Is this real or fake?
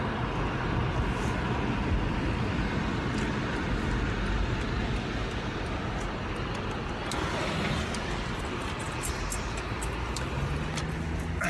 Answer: real